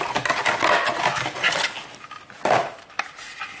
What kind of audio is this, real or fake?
real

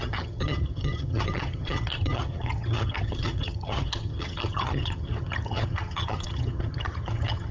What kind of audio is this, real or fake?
fake